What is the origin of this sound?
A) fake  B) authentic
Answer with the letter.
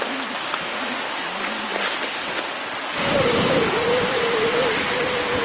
B